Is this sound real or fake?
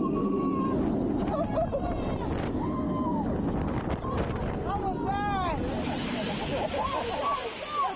real